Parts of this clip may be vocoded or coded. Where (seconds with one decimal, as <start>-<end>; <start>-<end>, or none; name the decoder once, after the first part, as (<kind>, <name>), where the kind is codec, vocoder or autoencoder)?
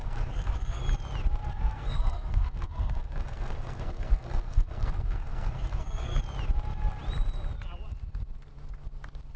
0.0-0.8 (codec, SNAC); 1.4-6.2